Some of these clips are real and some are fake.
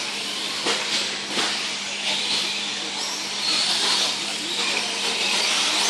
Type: real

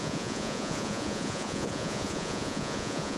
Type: fake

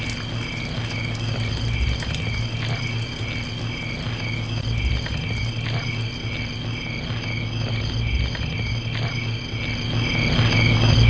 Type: real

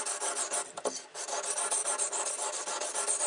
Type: real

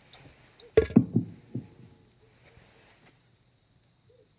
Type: real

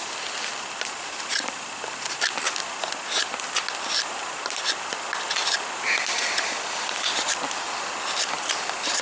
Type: real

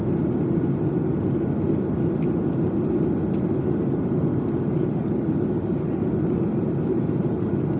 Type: real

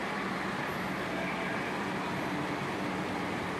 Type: real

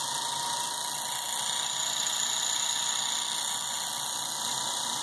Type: real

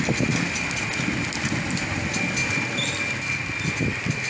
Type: real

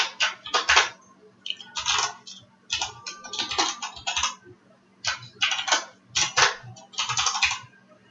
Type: real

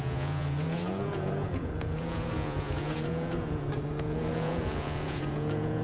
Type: fake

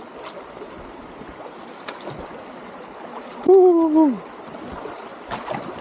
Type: real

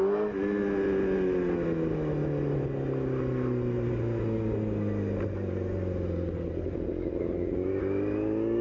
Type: real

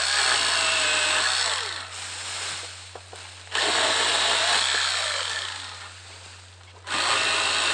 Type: real